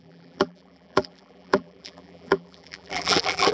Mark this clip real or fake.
fake